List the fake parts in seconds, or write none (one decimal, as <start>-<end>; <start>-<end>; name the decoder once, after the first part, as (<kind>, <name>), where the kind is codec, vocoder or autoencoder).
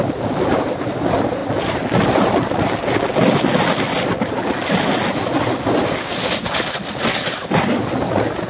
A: 7.1-7.8 (codec, DAC)